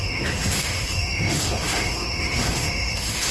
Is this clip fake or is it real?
fake